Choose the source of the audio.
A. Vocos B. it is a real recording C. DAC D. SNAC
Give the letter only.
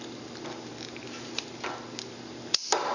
B